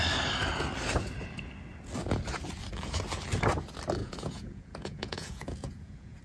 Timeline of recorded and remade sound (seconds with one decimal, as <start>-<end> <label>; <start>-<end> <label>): 0.0-4.0 recorded; 4.0-6.2 remade